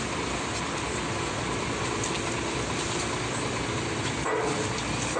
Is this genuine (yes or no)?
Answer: yes